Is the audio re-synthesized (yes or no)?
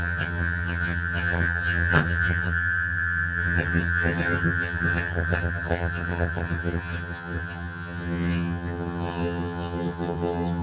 yes